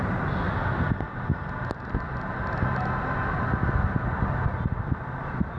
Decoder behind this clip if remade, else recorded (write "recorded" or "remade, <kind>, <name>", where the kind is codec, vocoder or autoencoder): recorded